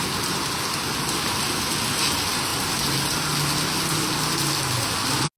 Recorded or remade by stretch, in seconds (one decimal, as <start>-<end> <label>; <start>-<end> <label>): 0.0-5.4 recorded